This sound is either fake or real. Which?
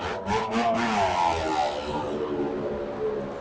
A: real